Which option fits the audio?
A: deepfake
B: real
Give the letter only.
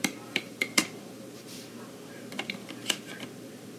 A